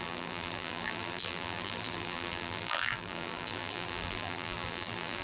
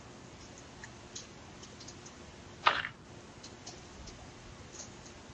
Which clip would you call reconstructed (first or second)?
first